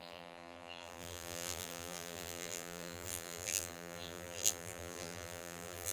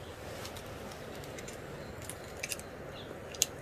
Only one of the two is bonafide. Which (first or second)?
second